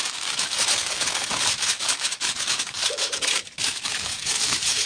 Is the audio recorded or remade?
remade